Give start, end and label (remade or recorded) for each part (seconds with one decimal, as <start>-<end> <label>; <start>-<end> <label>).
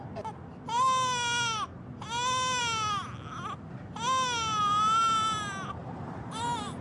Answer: 0.0-5.8 recorded; 5.8-6.8 remade